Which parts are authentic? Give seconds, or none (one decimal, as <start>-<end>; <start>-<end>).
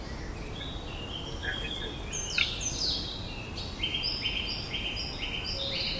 0.0-6.0